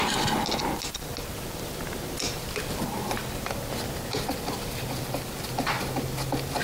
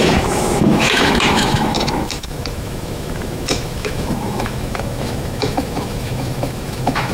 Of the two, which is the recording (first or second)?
first